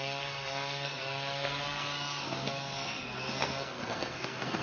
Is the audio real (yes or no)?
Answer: no